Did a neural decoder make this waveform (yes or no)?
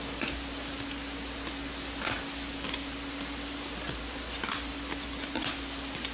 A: no